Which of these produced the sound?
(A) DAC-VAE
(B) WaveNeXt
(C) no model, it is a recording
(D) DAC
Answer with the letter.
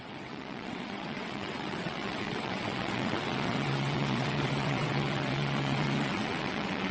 B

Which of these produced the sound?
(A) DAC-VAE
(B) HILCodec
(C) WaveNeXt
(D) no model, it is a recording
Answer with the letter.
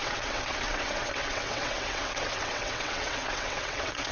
C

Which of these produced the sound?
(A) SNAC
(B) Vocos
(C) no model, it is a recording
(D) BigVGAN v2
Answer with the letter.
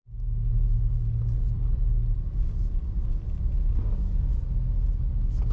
C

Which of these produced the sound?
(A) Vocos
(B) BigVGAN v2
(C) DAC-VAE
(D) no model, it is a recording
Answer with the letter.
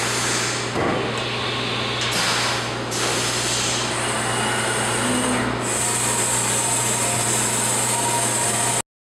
D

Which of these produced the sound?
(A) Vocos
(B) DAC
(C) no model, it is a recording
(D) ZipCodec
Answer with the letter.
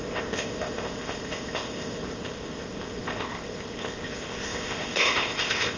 D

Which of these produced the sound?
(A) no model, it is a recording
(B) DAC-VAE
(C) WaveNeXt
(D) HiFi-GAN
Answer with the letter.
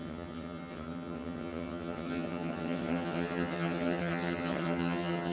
D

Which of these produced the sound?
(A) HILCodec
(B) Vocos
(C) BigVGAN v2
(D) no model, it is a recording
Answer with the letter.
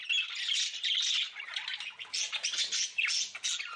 D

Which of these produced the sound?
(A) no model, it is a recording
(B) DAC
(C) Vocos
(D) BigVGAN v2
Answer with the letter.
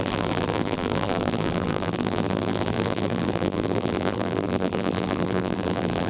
D